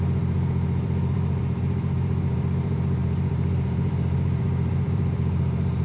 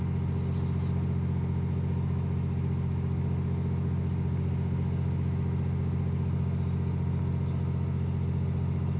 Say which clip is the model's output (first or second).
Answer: first